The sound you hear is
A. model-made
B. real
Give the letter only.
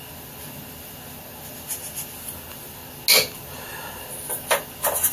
B